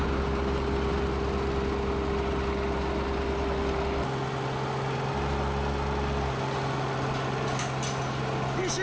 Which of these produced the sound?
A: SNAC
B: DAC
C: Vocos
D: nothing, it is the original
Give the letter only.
D